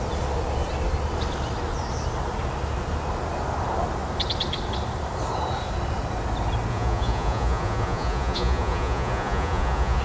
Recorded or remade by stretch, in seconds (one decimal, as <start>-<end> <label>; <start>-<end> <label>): 0.0-6.7 recorded; 6.7-10.0 remade